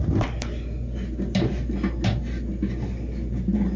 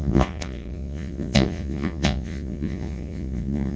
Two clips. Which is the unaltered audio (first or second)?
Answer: first